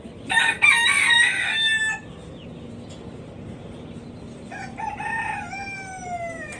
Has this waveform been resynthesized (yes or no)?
no